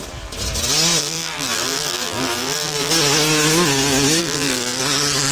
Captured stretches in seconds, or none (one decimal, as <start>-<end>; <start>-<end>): 0.0-1.0; 2.9-4.2; 4.8-5.3

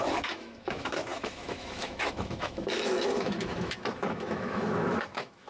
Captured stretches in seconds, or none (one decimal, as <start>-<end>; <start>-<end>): none

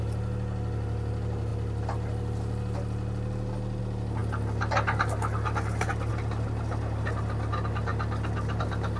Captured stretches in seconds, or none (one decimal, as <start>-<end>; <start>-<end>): 0.0-9.0

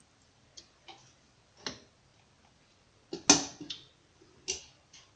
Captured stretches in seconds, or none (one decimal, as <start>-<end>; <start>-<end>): 0.0-5.2